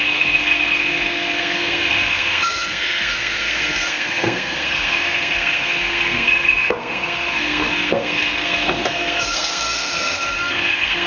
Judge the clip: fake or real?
fake